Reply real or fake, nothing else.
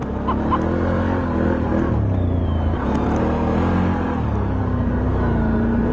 real